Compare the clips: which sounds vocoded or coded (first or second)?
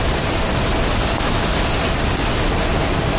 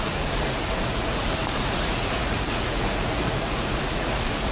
second